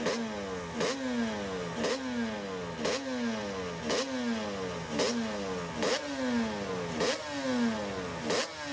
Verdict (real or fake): real